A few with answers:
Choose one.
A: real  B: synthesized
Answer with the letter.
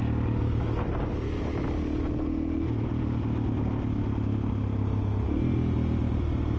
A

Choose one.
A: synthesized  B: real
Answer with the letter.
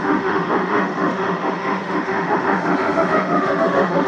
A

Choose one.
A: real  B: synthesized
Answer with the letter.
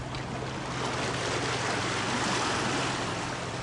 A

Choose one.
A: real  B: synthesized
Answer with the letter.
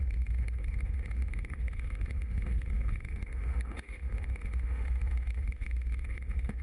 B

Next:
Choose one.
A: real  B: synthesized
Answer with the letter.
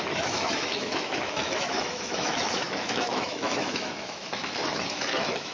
B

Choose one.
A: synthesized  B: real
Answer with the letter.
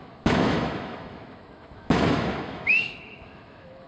A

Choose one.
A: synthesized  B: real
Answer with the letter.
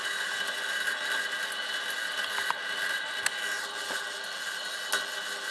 B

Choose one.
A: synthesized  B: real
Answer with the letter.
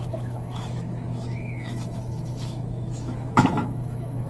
A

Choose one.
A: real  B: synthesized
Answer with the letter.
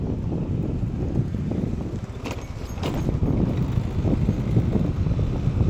A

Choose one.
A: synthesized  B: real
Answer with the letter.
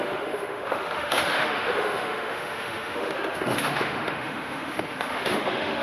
A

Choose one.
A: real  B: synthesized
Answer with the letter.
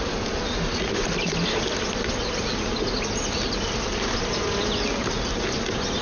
A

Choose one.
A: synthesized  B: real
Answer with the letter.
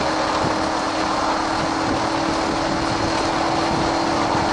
B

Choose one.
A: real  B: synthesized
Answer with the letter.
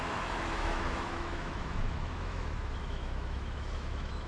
B